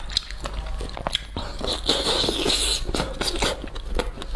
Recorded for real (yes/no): yes